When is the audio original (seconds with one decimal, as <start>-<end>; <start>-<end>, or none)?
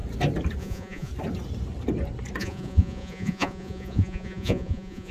0.0-0.6; 1.1-2.4